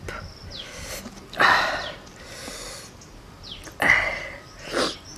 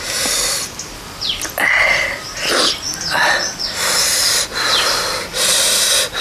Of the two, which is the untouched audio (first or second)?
first